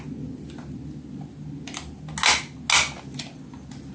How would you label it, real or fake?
real